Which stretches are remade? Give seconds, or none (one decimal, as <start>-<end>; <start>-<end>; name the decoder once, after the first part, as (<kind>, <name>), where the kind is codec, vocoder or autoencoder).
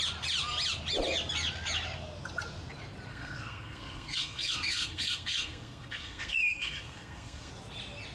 3.1-7.5 (codec, SNAC)